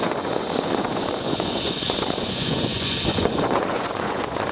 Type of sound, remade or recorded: remade